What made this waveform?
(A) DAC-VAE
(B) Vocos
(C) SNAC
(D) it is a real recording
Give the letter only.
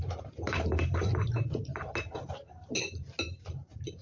D